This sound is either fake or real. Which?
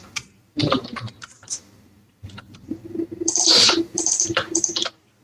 fake